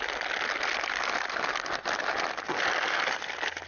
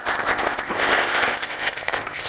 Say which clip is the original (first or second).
first